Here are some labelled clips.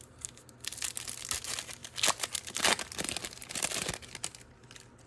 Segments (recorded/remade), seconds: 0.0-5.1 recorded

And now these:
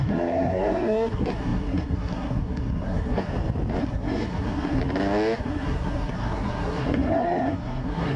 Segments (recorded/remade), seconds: 0.0-3.3 remade; 3.3-3.8 recorded; 3.8-4.8 remade; 4.8-5.4 recorded; 5.4-8.2 remade

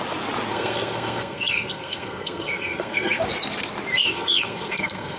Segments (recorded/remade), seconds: 0.0-0.5 recorded; 0.5-3.2 remade; 3.2-3.9 recorded; 3.9-5.2 remade

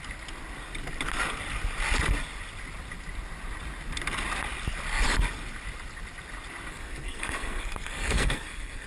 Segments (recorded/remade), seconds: 0.0-6.7 recorded; 6.7-8.9 remade